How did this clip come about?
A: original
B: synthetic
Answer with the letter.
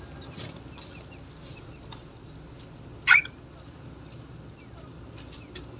A